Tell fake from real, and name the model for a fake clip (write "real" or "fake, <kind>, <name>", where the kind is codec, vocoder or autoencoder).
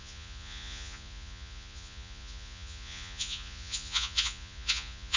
fake, vocoder, Vocos